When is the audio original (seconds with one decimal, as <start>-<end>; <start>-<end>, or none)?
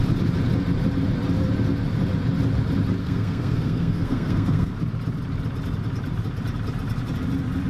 0.0-3.0; 4.8-7.7